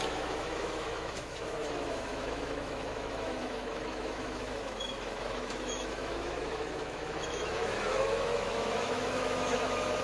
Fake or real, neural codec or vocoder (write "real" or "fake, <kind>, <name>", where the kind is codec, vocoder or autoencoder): fake, autoencoder, DAC-VAE